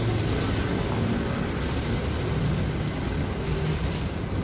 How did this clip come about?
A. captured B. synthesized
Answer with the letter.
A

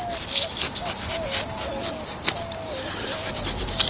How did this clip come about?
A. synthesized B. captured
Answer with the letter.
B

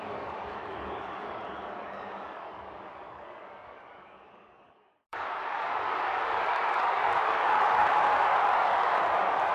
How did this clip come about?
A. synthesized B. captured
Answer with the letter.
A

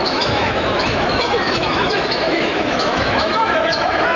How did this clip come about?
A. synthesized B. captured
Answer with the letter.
A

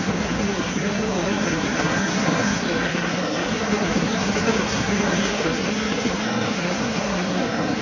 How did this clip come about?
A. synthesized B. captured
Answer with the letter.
A